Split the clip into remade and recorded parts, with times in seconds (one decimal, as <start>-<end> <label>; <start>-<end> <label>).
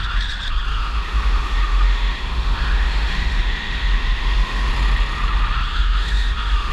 0.0-0.7 recorded; 0.7-4.7 remade; 4.7-5.7 recorded; 5.7-6.7 remade